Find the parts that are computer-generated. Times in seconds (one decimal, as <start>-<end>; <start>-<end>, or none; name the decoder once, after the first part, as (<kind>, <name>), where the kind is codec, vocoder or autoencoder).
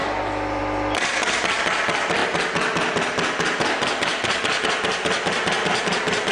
none